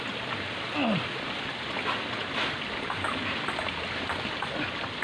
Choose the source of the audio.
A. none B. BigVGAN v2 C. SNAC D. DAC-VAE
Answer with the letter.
A